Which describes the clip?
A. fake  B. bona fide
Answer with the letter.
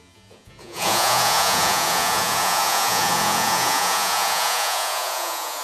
A